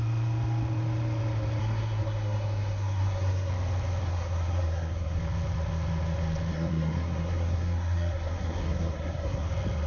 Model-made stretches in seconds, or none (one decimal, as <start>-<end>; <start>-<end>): 1.6-3.5; 4.0-5.2; 6.5-9.5